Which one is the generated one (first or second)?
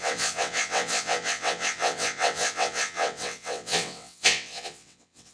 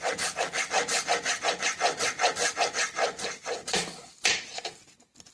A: first